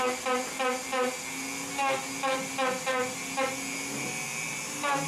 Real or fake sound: real